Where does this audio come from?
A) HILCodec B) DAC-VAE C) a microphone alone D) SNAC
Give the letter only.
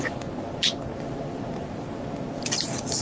C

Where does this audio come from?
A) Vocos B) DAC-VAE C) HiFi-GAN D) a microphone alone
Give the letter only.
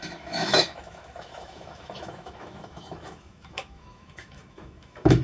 B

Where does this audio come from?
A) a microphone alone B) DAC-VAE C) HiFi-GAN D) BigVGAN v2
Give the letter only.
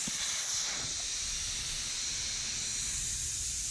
A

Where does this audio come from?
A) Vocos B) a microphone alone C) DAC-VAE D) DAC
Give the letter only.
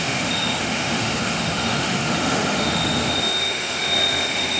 C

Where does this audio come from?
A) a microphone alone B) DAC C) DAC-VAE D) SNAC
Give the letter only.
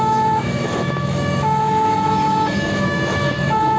C